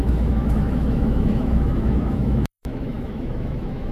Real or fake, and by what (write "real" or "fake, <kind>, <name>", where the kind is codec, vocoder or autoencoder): fake, autoencoder, DAC-VAE